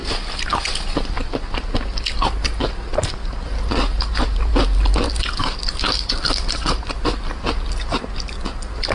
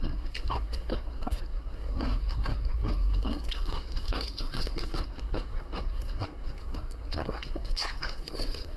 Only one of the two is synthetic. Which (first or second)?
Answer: second